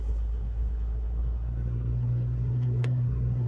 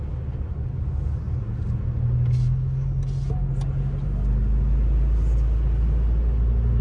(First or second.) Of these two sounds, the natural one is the second